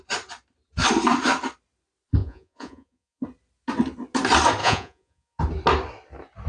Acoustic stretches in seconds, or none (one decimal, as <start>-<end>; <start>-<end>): 0.0-2.2; 3.2-4.6; 5.4-6.5